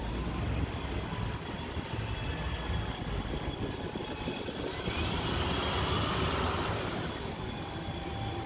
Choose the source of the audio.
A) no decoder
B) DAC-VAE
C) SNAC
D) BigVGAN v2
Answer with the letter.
A